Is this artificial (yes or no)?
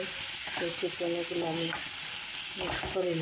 no